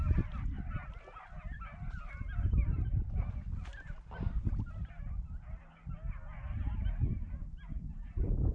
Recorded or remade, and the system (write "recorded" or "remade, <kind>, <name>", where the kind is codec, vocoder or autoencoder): recorded